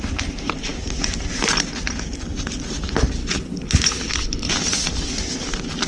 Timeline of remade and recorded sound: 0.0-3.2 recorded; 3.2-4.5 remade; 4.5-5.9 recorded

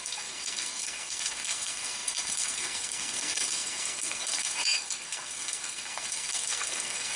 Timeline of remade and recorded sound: 0.0-7.2 remade

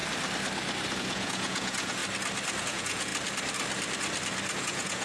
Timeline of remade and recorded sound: 0.0-1.0 recorded; 1.0-2.0 remade; 2.0-2.6 recorded; 2.6-3.1 remade; 3.1-4.6 recorded; 4.6-5.0 remade

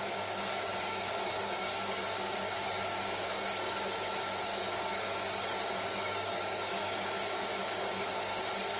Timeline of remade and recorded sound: 0.0-8.8 remade

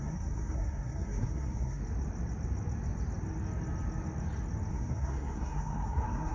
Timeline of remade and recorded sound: 0.0-1.8 remade; 1.8-4.7 recorded; 4.7-6.3 remade

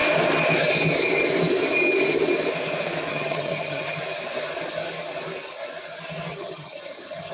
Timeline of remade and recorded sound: 0.0-3.1 recorded; 3.1-4.0 remade; 4.0-6.3 recorded; 6.3-7.3 remade